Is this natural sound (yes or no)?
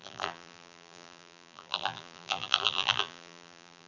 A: no